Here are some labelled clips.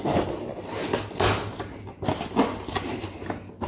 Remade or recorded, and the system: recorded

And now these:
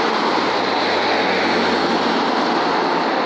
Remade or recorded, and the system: recorded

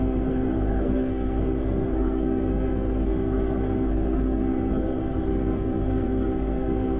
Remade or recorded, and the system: remade, codec, SNAC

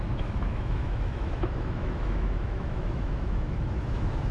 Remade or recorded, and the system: remade, autoencoder, DAC-VAE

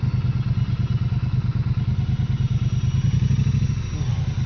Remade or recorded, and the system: recorded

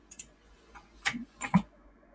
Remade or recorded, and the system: remade, vocoder, Vocos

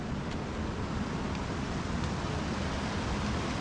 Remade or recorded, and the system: recorded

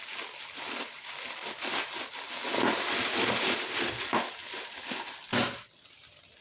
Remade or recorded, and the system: recorded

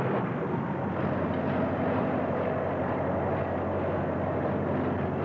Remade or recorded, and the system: recorded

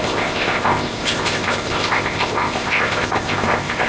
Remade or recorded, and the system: remade, codec, ZipCodec